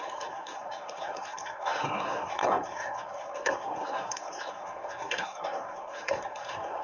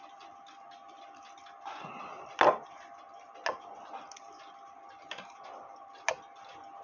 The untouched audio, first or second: second